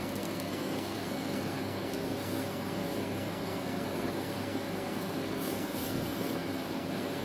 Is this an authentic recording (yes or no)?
no